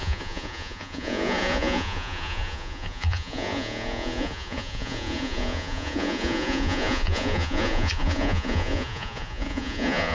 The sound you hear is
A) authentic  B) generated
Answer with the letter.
B